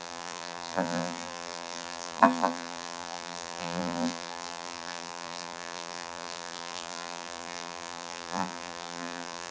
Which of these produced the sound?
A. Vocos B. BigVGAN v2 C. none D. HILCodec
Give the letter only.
B